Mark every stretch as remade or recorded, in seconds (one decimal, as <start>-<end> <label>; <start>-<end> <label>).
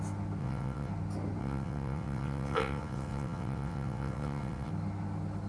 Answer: 0.0-0.4 recorded; 0.4-0.9 remade; 0.9-1.4 recorded; 1.4-4.7 remade; 4.7-5.5 recorded